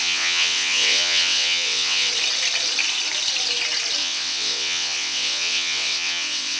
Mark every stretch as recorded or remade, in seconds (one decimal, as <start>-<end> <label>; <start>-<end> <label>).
0.0-2.1 remade; 2.1-4.0 recorded; 4.0-6.6 remade